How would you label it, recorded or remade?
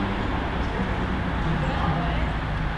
recorded